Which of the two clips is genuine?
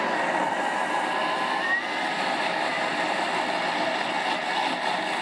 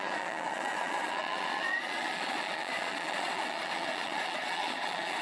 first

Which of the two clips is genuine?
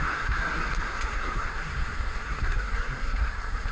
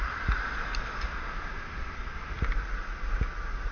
second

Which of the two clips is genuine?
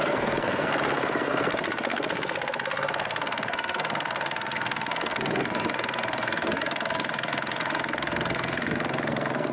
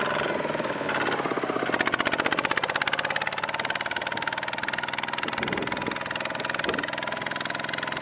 second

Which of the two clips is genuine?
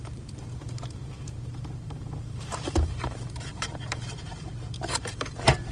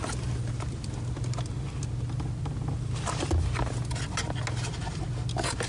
second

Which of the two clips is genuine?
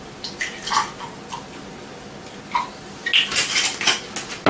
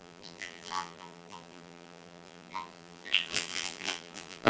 first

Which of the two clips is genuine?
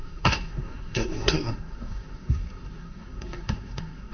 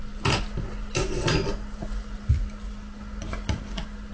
second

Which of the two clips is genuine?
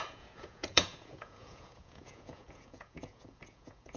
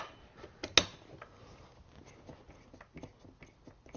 second